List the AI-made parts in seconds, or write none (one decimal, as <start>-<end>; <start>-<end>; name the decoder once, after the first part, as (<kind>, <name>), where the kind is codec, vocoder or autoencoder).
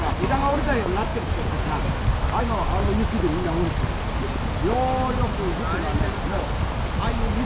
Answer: none